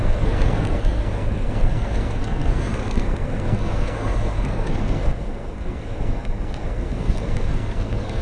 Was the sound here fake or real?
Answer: fake